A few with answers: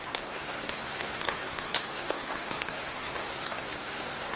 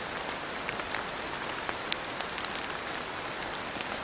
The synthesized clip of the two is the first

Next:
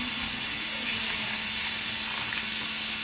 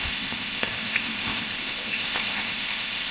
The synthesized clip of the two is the second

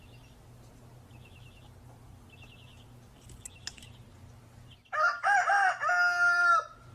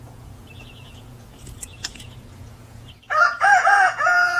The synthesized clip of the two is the second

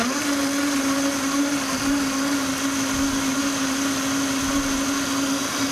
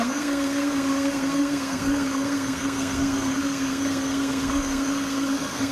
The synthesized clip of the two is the second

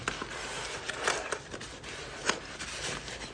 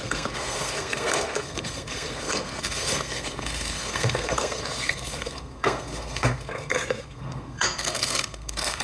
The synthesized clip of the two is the second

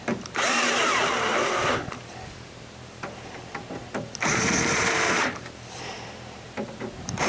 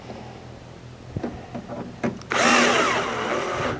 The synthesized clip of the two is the first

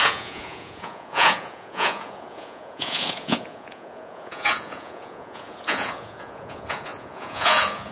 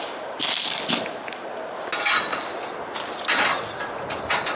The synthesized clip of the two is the first